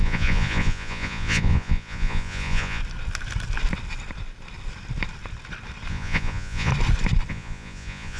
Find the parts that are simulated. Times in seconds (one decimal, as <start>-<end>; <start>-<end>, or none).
0.0-2.8; 5.9-6.7; 7.3-8.2